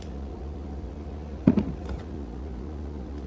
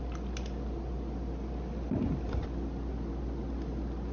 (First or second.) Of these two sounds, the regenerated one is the first